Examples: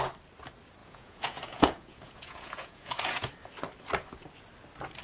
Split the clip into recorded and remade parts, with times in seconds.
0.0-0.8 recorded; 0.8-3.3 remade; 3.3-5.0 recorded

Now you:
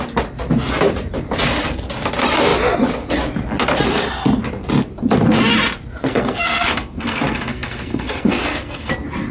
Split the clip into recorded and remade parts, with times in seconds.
0.0-6.0 recorded; 6.0-8.9 remade; 8.9-9.3 recorded

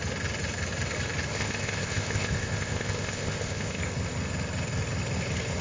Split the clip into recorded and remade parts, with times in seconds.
0.0-1.3 recorded; 1.3-3.8 remade; 3.8-5.6 recorded

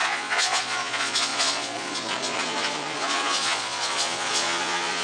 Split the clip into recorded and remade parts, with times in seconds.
0.0-5.0 remade